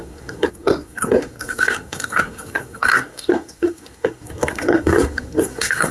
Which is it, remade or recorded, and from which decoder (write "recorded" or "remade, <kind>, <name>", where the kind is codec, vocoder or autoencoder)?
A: remade, codec, SNAC